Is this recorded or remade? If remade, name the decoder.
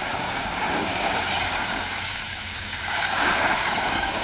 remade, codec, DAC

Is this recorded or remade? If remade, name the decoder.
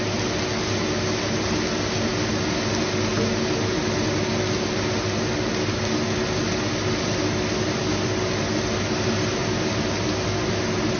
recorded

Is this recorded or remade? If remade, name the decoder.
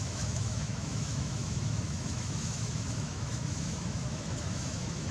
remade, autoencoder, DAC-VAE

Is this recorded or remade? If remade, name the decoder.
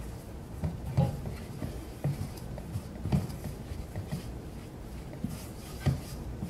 remade, vocoder, BigVGAN v2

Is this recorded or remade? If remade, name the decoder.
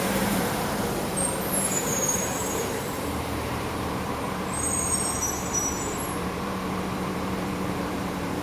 remade, vocoder, BigVGAN v2